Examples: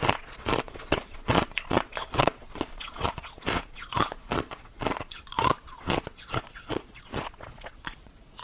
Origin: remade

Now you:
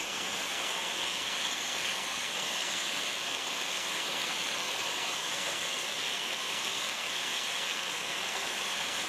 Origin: remade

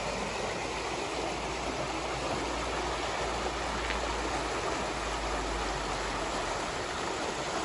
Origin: recorded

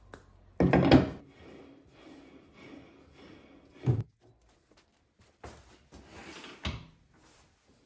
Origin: recorded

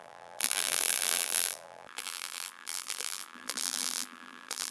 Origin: remade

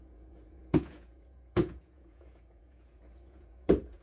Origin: remade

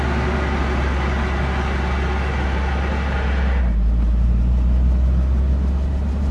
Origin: recorded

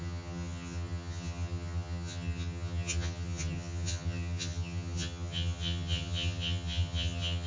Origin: remade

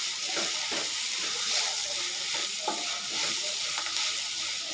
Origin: recorded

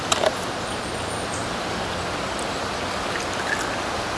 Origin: recorded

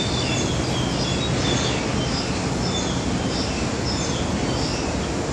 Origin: recorded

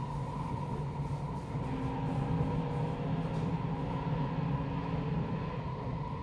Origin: recorded